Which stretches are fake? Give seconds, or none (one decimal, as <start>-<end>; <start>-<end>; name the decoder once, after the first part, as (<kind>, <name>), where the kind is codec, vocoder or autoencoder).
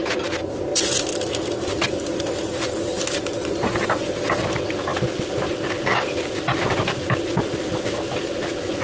none